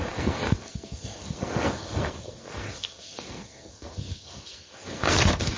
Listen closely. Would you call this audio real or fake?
fake